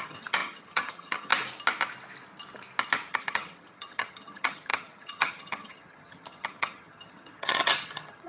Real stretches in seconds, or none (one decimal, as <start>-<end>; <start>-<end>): 1.3-3.1